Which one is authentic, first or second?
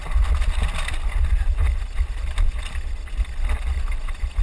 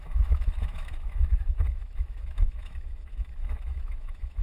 first